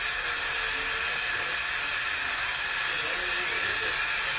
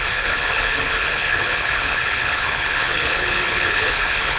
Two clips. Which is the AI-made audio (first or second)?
second